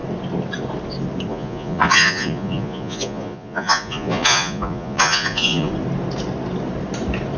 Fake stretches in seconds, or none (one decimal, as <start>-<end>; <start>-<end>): 1.3-5.7

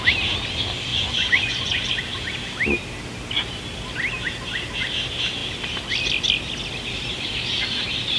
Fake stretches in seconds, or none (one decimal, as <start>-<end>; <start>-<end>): 0.9-1.9

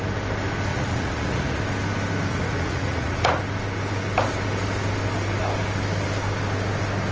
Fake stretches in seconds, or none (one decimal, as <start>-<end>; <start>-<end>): 0.7-1.6; 2.3-3.4

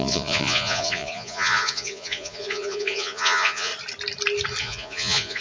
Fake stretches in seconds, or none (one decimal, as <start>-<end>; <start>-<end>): 0.0-3.7; 4.6-5.4